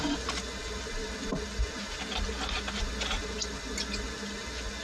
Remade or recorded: recorded